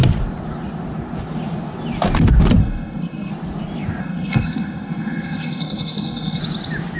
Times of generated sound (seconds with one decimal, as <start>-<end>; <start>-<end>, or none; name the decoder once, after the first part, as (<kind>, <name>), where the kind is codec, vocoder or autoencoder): 2.6-3.3 (codec, SNAC); 4.0-6.4